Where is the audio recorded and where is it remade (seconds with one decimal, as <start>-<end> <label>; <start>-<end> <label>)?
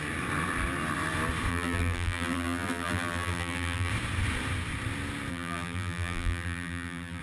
0.0-1.5 recorded; 1.5-3.9 remade; 3.9-5.3 recorded; 5.3-7.2 remade